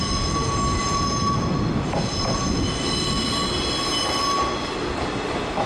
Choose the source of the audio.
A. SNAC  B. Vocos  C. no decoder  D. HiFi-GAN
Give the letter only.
C